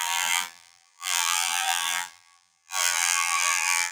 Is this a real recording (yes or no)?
no